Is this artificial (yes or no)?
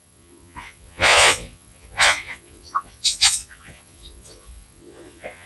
yes